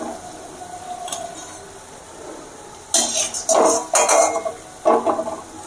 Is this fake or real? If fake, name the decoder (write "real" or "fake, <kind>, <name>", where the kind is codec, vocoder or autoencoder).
real